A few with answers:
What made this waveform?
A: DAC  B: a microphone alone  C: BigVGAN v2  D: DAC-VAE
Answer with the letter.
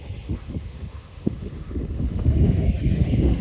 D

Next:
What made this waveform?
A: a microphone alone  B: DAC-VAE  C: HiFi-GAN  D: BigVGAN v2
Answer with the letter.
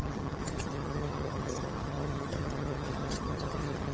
C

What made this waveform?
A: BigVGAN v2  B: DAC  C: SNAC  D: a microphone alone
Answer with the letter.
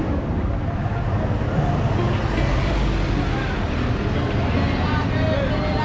D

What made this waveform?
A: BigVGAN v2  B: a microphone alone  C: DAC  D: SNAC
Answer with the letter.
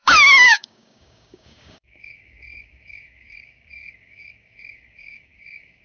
C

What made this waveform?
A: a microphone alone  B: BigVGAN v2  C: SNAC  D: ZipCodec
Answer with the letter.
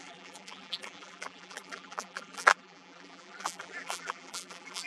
B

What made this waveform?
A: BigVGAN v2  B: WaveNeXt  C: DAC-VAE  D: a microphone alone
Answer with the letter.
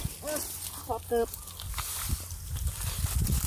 D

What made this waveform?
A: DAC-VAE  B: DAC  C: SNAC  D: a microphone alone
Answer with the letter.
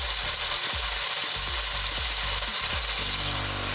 D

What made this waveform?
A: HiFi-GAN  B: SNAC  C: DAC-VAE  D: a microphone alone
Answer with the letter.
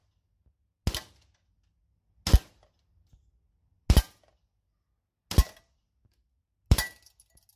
D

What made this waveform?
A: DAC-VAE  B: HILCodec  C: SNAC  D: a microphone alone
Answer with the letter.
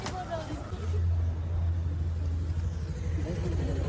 D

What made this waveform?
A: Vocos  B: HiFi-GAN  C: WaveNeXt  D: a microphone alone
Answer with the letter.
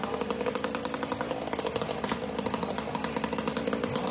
D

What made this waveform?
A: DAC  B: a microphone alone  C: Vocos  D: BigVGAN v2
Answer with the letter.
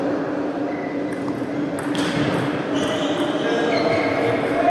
B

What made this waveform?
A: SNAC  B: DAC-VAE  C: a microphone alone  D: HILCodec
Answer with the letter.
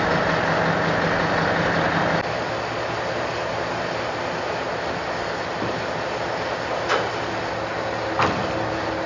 C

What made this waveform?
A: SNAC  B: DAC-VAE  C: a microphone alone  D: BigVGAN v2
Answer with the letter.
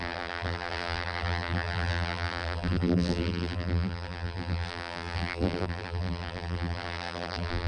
D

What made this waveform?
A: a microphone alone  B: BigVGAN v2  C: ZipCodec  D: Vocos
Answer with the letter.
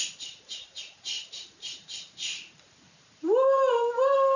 B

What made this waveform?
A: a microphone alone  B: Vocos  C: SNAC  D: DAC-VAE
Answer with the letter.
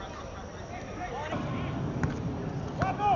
A